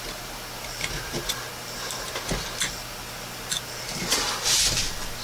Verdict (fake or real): real